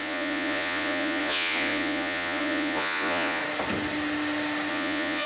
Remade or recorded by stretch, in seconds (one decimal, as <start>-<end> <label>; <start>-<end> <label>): 0.0-3.4 remade; 3.4-4.7 recorded; 4.7-5.3 remade